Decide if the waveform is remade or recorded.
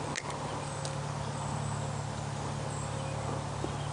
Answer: recorded